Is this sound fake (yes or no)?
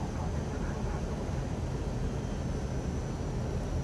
no